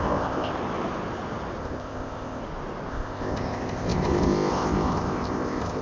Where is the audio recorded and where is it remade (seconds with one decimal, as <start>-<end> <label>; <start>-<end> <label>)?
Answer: 0.0-0.5 remade; 0.5-1.6 recorded; 1.6-2.4 remade; 2.4-2.9 recorded; 2.9-5.8 remade